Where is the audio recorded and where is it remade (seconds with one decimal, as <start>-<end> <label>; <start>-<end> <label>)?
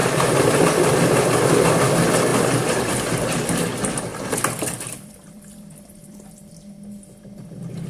0.0-0.5 remade; 0.5-4.1 recorded; 4.1-6.5 remade; 6.5-7.9 recorded